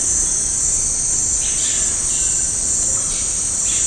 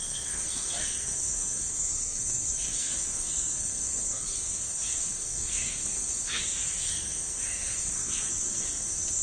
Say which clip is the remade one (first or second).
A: second